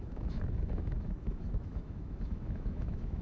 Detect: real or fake fake